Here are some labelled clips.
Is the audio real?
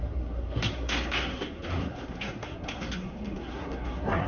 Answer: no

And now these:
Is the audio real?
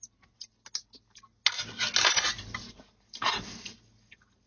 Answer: yes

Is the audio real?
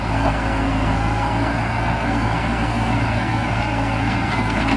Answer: no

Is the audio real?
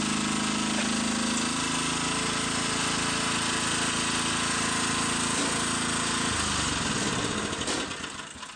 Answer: yes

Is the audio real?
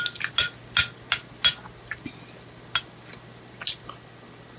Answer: yes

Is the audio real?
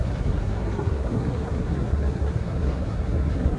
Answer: no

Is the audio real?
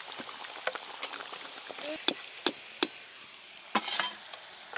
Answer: yes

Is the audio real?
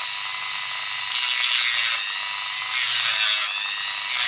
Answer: yes